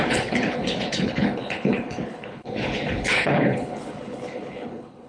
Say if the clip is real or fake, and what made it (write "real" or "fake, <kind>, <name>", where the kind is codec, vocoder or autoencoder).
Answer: fake, codec, HILCodec